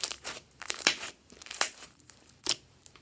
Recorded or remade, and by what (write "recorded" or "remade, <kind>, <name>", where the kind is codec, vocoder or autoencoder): remade, vocoder, BigVGAN v2